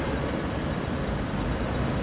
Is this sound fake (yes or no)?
no